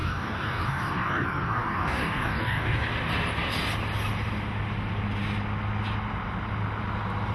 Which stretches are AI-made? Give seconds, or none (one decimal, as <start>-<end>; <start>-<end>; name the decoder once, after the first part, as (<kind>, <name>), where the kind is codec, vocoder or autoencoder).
0.0-2.9 (codec, DAC)